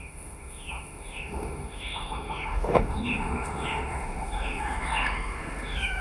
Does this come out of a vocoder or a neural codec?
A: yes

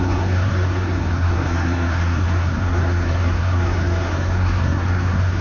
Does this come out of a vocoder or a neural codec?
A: yes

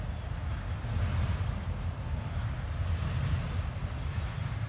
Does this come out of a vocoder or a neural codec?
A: no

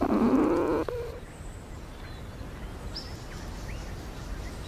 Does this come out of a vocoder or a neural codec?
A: no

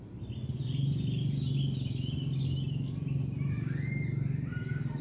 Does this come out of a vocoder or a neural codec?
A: no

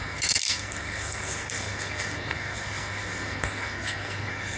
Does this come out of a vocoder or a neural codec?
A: yes